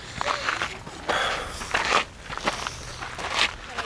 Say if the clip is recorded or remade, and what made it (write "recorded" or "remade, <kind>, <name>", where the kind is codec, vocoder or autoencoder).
recorded